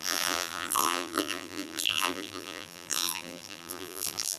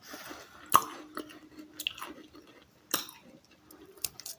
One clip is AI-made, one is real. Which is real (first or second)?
second